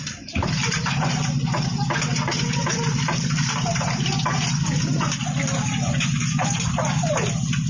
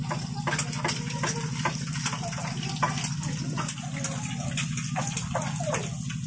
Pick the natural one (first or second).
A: second